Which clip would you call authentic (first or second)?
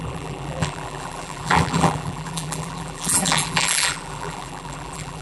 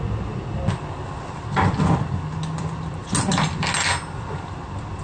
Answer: second